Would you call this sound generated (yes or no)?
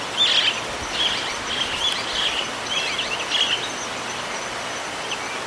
no